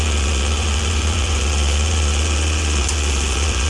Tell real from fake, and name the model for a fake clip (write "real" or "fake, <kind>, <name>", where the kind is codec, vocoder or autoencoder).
fake, vocoder, Vocos